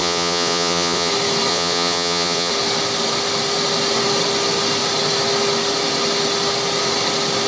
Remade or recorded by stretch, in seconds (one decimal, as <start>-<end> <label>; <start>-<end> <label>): 0.0-1.1 remade; 1.1-1.5 recorded; 1.5-2.5 remade; 2.5-7.5 recorded